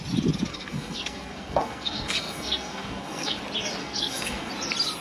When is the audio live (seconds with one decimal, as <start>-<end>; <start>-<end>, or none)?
0.0-0.5; 3.4-3.8; 4.5-5.0